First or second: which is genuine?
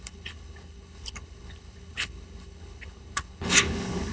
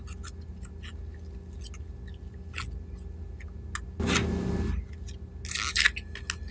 second